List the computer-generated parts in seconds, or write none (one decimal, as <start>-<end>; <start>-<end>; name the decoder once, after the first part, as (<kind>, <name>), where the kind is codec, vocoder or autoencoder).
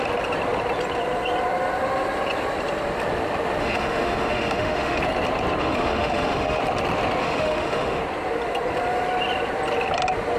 3.6-5.0 (autoencoder, DAC-VAE); 5.6-6.6; 7.2-8.0